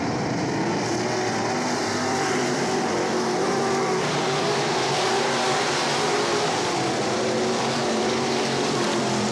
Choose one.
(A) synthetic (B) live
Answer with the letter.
A